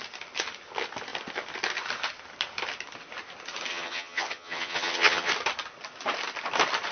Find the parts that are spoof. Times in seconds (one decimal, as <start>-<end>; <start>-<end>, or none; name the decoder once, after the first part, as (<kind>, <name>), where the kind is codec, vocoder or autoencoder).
3.7-5.3 (vocoder, HiFi-GAN)